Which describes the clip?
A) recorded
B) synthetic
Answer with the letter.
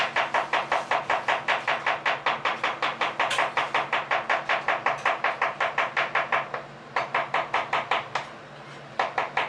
A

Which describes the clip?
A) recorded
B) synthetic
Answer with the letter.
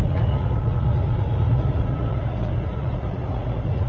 B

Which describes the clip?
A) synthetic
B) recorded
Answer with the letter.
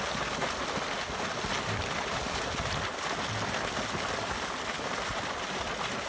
B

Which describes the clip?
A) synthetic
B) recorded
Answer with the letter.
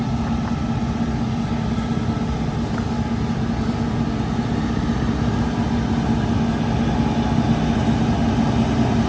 B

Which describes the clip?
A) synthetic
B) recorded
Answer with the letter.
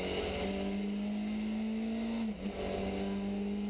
B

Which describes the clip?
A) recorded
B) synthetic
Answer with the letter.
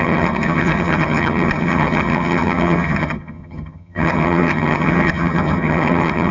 B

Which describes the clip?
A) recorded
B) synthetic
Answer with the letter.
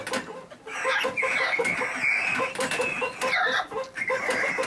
A